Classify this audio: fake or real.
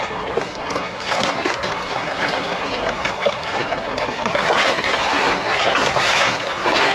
fake